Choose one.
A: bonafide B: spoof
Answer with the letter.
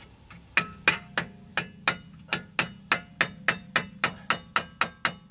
A